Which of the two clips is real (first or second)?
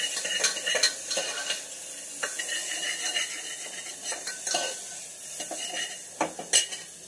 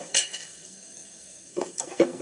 first